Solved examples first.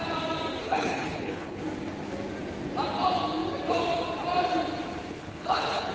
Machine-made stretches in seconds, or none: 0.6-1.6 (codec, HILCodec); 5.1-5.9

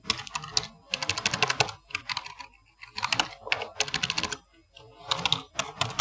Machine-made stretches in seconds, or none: none